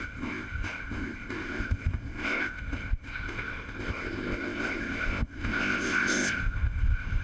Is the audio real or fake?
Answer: fake